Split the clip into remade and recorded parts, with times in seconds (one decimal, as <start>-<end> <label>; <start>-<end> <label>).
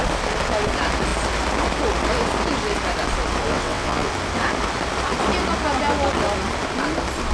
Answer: 0.0-3.5 recorded; 3.5-4.1 remade; 4.1-7.3 recorded